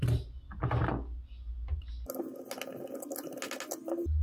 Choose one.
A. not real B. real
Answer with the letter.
B